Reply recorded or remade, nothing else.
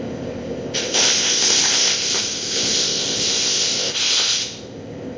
remade